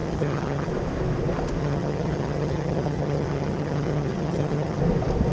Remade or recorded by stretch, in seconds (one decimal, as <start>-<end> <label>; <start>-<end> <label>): 0.0-0.7 remade; 0.7-1.6 recorded; 1.6-4.8 remade; 4.8-5.3 recorded

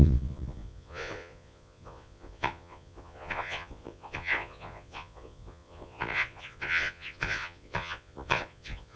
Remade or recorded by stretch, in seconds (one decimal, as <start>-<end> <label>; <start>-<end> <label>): 0.0-9.0 remade

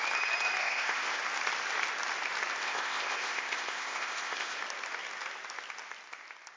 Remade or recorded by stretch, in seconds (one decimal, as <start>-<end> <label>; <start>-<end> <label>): 0.0-0.6 recorded; 0.6-1.2 remade; 1.2-2.6 recorded; 2.6-4.6 remade; 4.6-6.6 recorded

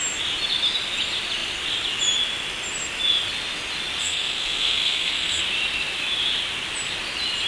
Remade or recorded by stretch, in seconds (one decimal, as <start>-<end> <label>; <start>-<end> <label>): 0.0-4.0 recorded; 4.0-5.4 remade; 5.4-7.5 recorded

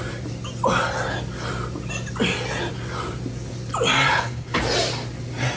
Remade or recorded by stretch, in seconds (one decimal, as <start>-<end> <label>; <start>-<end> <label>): 0.0-4.1 recorded; 4.1-4.6 remade; 4.6-5.6 recorded

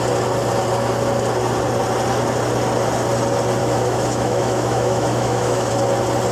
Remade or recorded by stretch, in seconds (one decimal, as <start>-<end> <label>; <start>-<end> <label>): 0.0-3.6 recorded; 3.6-5.7 remade; 5.7-6.3 recorded